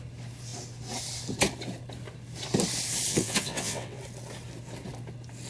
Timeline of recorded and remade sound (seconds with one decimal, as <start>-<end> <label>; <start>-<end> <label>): 0.0-3.1 recorded; 3.1-4.0 remade; 4.0-5.5 recorded